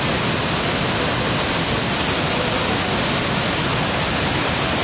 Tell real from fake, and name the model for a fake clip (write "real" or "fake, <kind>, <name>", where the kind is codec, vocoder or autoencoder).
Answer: real